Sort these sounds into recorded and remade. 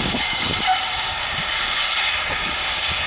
remade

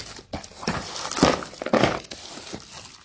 recorded